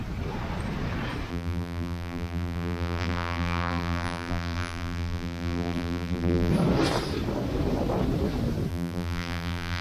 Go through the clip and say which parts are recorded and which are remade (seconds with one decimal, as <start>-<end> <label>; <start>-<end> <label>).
0.0-1.3 recorded; 1.3-6.5 remade; 6.5-8.7 recorded; 8.7-9.8 remade